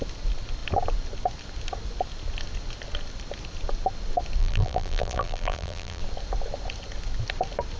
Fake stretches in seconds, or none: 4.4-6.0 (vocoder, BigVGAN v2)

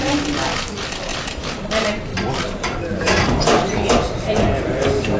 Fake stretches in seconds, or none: 1.1-1.6 (vocoder, BigVGAN v2); 2.1-5.2

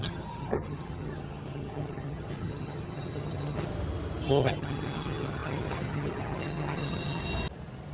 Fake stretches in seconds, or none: 0.0-3.7 (vocoder, HiFi-GAN); 4.3-7.2